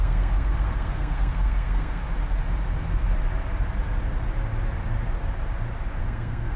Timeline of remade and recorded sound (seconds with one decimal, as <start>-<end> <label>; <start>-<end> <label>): 0.0-2.0 remade; 2.0-6.0 recorded; 6.0-6.6 remade